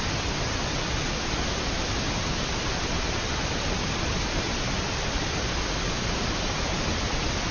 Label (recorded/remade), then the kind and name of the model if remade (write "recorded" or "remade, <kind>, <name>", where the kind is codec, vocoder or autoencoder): recorded